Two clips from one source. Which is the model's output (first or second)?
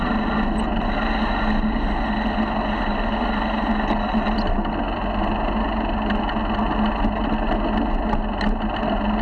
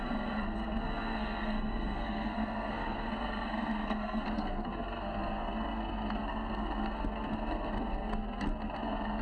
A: second